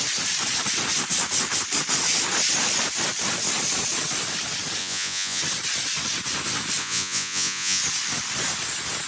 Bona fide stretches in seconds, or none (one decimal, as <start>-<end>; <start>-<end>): 0.0-4.8; 5.4-6.8; 7.8-9.1